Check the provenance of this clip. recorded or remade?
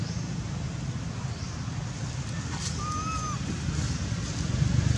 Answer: recorded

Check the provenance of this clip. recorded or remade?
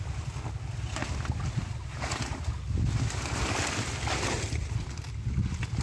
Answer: recorded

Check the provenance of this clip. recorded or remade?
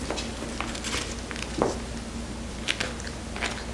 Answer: recorded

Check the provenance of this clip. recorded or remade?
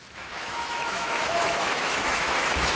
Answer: remade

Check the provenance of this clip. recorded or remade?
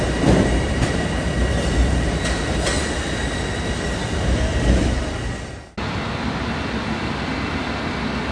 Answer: recorded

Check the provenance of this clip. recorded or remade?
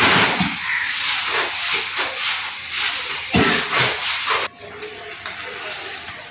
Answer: recorded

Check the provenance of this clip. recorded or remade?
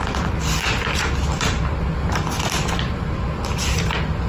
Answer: recorded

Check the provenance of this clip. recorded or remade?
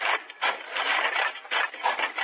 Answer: recorded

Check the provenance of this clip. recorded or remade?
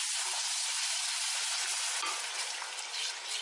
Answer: recorded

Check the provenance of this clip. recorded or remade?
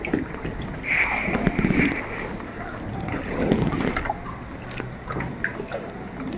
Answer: recorded